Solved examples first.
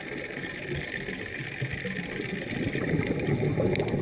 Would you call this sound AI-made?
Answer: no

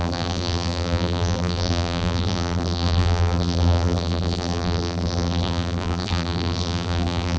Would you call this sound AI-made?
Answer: yes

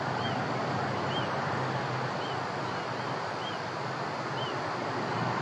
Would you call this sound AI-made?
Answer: no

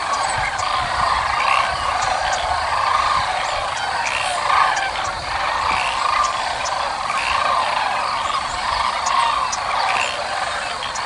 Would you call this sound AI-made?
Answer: no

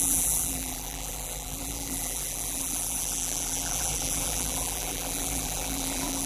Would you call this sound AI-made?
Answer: yes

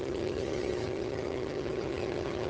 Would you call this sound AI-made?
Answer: yes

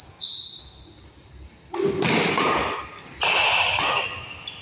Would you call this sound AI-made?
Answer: no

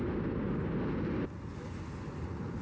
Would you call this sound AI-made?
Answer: no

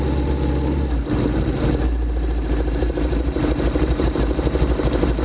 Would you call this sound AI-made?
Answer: no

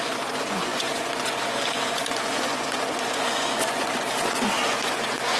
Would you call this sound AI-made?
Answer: yes